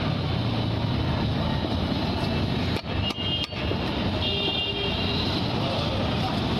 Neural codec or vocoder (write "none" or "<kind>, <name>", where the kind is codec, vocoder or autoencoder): none